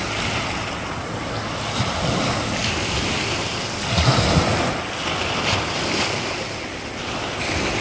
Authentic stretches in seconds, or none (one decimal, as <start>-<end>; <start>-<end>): 0.0-7.8